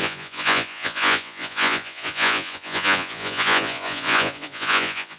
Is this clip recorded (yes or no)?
no